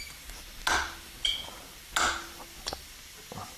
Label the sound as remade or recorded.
recorded